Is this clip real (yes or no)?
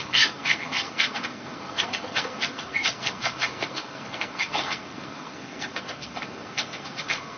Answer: no